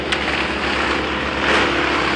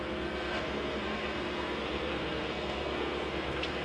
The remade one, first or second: second